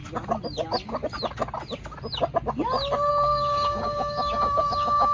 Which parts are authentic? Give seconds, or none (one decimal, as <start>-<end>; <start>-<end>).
0.0-3.1